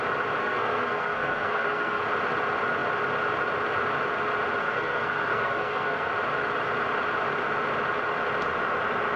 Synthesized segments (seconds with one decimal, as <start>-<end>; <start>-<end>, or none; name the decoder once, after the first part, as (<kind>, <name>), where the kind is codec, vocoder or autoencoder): 0.4-2.0 (codec, SNAC); 4.6-6.1